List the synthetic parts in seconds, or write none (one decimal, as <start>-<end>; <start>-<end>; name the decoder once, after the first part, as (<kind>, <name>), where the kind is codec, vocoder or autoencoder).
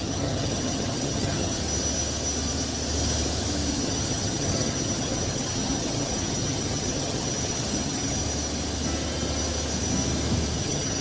0.0-1.6 (vocoder, HiFi-GAN); 3.7-8.2; 10.6-11.0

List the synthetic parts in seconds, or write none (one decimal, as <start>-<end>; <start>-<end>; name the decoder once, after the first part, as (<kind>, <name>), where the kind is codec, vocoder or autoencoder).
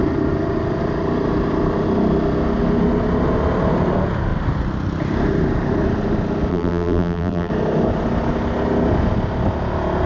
6.5-7.5 (vocoder, BigVGAN v2)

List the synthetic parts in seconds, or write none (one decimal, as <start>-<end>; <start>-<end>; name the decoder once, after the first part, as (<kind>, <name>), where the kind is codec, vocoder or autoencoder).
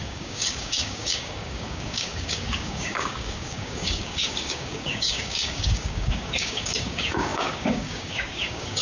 0.0-8.8 (codec, DAC)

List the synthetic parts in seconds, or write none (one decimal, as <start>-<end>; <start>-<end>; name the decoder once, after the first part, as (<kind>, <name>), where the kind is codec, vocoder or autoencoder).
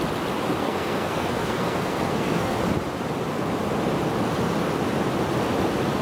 0.6-2.6 (codec, SNAC)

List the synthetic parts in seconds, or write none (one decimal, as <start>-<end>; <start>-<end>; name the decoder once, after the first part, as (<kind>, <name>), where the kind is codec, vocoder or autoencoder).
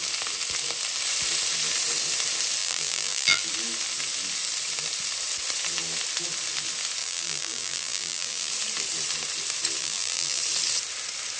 2.6-3.4 (vocoder, BigVGAN v2); 7.0-8.5; 9.8-10.4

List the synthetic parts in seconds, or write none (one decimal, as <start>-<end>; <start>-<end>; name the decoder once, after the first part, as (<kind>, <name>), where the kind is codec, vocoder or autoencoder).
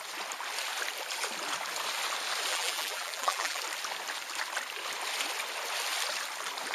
2.5-3.6 (vocoder, BigVGAN v2)